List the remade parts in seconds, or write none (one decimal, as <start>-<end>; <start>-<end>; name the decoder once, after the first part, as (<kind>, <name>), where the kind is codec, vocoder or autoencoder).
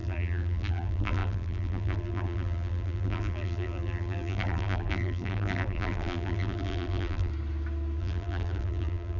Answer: 0.0-7.3 (vocoder, BigVGAN v2); 8.0-9.2